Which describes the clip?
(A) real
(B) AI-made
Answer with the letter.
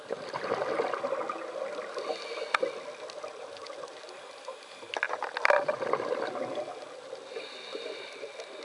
A